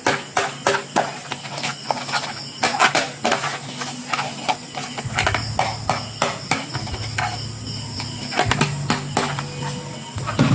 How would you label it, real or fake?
real